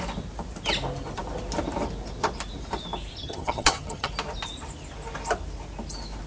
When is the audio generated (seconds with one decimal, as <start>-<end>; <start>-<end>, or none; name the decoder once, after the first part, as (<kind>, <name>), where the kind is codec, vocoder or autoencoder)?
3.2-4.1 (vocoder, HiFi-GAN)